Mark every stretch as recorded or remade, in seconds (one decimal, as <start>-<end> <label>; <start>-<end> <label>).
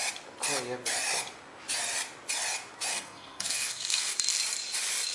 0.0-2.9 recorded; 2.9-4.1 remade; 4.1-5.1 recorded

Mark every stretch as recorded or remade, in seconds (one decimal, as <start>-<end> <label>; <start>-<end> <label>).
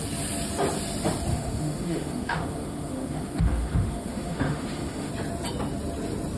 0.0-1.3 recorded; 1.3-5.1 remade; 5.1-6.4 recorded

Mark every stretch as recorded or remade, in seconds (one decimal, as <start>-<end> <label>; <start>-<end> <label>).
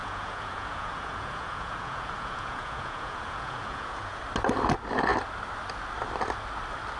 0.0-4.2 remade; 4.2-7.0 recorded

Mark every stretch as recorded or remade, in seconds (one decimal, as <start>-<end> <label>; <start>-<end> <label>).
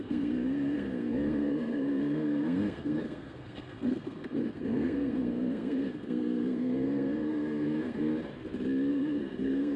0.0-8.1 remade; 8.1-8.9 recorded; 8.9-9.8 remade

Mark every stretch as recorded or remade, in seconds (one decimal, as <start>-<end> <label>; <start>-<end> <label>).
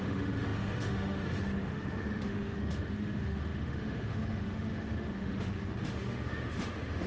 0.0-7.1 remade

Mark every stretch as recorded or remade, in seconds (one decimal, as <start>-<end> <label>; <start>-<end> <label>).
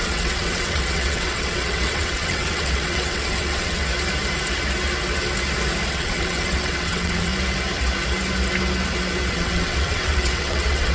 0.0-3.9 remade; 3.9-5.9 recorded; 5.9-7.3 remade; 7.3-9.3 recorded; 9.3-10.9 remade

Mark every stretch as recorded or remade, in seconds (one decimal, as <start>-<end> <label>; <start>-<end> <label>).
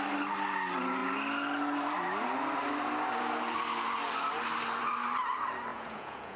0.0-5.7 recorded; 5.7-6.4 remade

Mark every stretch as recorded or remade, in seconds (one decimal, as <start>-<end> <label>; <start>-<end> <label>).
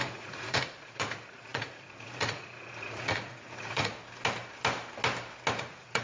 0.0-3.9 remade; 3.9-5.6 recorded; 5.6-6.0 remade